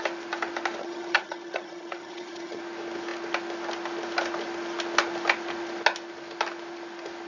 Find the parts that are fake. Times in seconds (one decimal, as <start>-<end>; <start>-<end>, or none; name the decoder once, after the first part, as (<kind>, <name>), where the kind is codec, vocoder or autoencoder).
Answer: 0.8-2.6 (vocoder, HiFi-GAN)

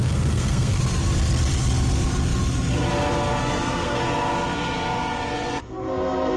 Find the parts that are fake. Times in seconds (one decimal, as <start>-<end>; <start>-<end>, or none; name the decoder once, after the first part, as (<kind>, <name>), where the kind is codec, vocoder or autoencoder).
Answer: 0.0-0.8 (codec, SNAC); 3.4-4.0; 5.6-6.4

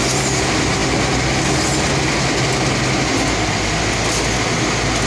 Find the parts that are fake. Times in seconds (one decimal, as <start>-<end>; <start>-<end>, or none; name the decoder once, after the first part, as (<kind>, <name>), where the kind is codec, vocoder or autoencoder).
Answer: none

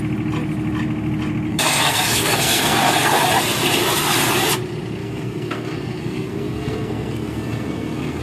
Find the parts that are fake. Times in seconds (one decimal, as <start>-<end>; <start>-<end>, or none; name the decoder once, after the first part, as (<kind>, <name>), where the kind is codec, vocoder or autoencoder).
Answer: 1.5-3.2 (codec, SNAC); 5.0-8.2